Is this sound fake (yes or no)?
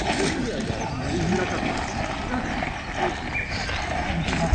no